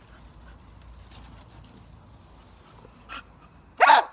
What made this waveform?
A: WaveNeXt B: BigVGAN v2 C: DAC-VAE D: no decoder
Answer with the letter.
D